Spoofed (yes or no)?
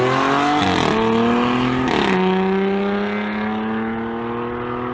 no